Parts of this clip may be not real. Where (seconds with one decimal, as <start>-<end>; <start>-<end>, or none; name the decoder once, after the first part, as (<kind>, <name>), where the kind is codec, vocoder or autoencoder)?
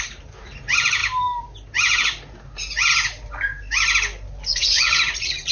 4.5-5.5 (vocoder, Vocos)